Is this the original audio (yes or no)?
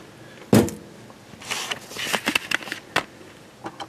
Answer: yes